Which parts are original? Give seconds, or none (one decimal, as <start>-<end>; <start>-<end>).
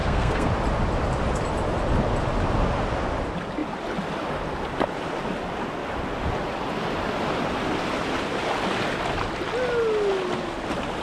0.5-11.0